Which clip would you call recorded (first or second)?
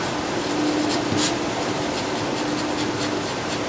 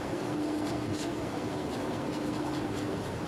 first